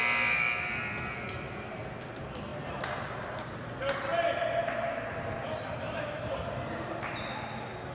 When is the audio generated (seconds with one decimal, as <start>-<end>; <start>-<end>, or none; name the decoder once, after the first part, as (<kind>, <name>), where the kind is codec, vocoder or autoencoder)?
2.5-3.6 (vocoder, BigVGAN v2); 4.1-6.3